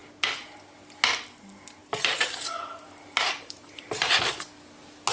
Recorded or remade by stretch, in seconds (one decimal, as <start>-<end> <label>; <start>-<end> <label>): 0.0-1.8 recorded; 1.8-4.4 remade; 4.4-5.1 recorded